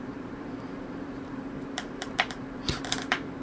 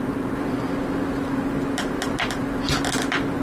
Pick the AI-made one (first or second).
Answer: first